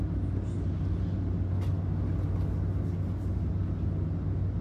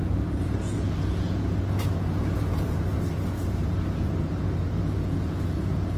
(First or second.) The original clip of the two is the first